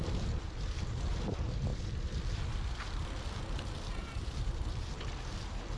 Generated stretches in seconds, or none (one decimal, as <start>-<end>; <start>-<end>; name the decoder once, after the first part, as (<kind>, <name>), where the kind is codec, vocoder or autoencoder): 0.0-5.8 (vocoder, BigVGAN v2)